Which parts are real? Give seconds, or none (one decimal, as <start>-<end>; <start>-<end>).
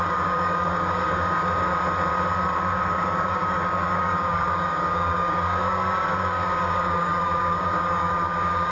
1.7-2.4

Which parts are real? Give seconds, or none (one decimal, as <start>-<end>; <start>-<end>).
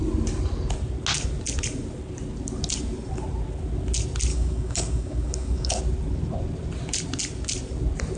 0.0-4.3; 5.8-8.2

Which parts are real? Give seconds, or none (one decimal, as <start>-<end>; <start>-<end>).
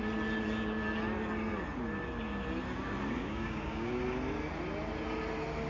0.0-3.2; 4.0-5.7